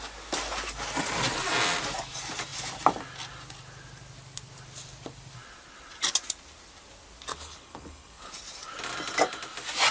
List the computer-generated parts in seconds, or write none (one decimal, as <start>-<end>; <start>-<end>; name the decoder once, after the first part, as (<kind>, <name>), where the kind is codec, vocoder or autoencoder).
7.3-8.3 (codec, HILCodec)